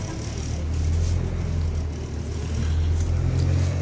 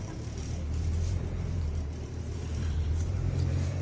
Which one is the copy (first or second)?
second